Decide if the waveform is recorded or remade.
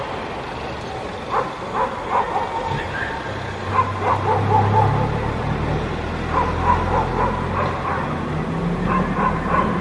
recorded